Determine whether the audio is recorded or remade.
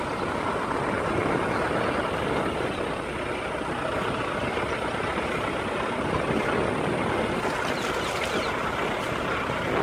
recorded